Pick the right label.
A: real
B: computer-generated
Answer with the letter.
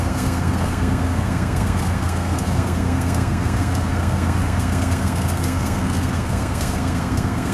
B